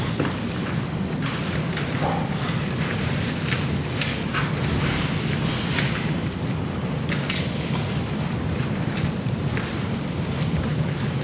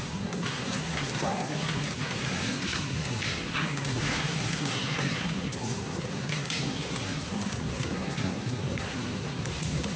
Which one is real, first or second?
first